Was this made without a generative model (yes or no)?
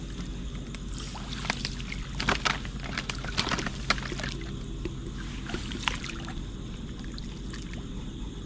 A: yes